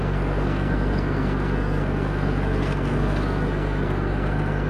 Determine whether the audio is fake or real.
fake